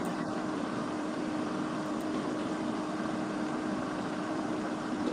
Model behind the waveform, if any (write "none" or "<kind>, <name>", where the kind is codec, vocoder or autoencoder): vocoder, BigVGAN v2